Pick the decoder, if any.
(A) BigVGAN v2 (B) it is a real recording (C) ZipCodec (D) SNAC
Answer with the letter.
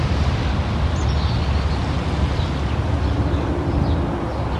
B